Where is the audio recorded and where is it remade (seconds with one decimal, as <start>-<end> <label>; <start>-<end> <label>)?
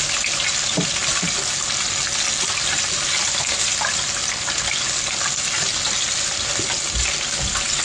0.0-7.8 recorded